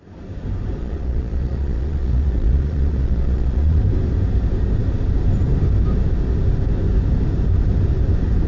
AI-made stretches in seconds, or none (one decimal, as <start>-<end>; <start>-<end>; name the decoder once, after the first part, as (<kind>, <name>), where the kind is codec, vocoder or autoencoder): 0.8-3.8 (vocoder, Vocos)